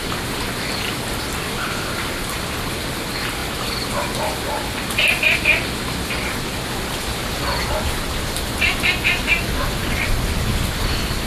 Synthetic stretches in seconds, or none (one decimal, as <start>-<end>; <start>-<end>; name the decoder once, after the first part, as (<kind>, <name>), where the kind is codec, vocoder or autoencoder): none